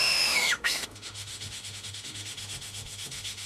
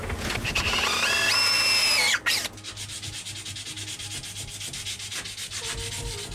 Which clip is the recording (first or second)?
second